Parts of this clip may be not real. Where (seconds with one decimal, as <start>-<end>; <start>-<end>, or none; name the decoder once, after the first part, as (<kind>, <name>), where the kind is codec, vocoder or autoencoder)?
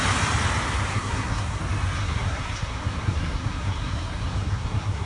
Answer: 0.9-1.6 (codec, SNAC); 2.0-5.1